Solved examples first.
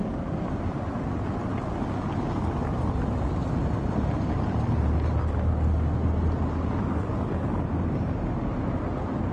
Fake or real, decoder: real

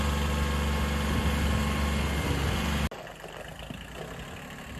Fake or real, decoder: real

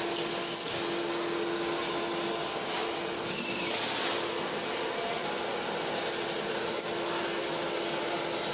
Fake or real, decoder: real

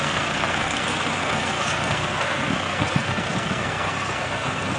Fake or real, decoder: fake, codec, SNAC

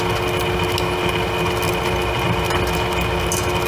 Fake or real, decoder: real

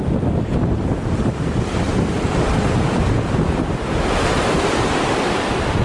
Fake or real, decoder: real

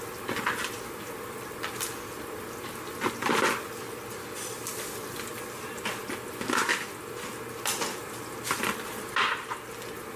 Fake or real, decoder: real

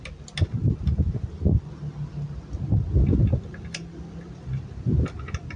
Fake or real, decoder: real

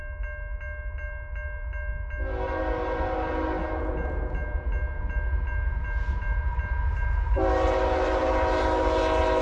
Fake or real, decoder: real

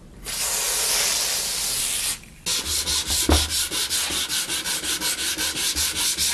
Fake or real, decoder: real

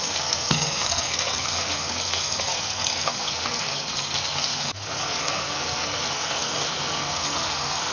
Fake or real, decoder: fake, codec, SNAC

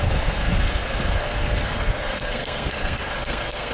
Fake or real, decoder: fake, codec, SNAC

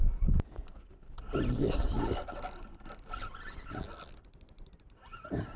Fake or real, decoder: real